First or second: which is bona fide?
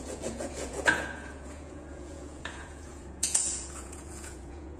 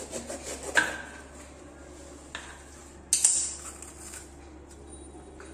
second